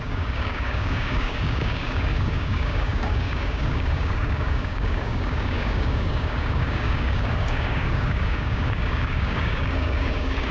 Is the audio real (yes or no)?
no